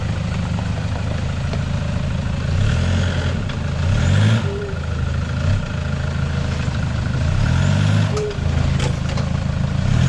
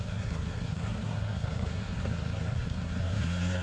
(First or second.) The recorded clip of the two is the first